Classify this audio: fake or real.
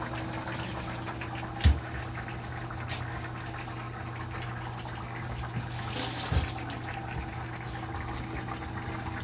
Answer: real